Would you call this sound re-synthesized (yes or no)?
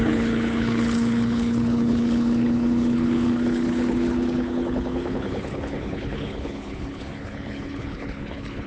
yes